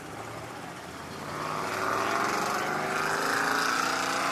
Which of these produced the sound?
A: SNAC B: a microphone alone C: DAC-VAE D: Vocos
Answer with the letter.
B